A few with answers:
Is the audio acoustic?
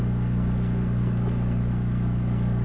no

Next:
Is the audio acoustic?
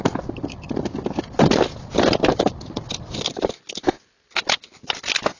yes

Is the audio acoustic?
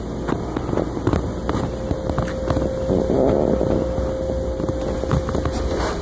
yes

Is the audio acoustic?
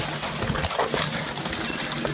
yes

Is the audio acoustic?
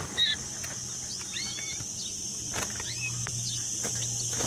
yes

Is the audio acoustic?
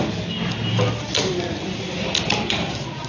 yes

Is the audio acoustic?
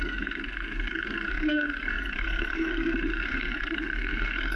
no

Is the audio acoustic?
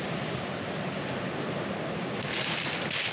yes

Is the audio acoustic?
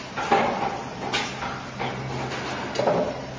yes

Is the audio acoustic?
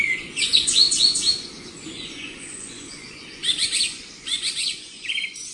no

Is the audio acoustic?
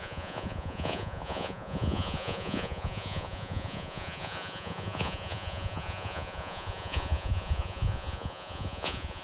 no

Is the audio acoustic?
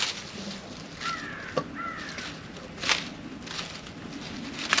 yes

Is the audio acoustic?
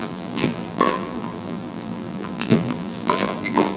no